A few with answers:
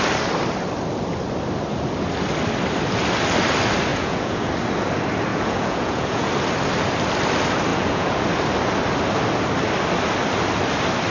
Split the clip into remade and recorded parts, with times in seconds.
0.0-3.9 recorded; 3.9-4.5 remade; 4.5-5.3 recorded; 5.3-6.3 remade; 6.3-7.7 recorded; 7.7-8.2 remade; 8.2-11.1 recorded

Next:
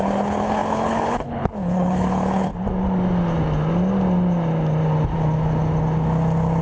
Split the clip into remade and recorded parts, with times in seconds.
0.0-2.5 remade; 2.5-6.6 recorded

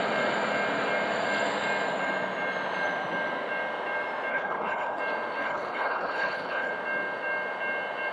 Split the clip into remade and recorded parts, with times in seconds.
0.0-4.3 recorded; 4.3-5.0 remade; 5.0-5.4 recorded; 5.4-6.7 remade; 6.7-8.1 recorded

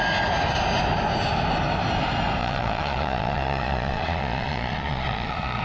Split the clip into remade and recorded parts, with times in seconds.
0.0-2.4 recorded; 2.4-5.6 remade